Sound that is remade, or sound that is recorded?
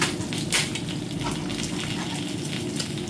recorded